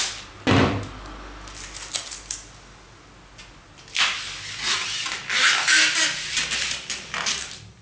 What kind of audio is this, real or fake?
real